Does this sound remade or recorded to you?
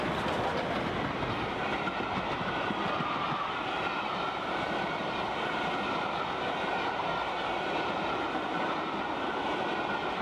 recorded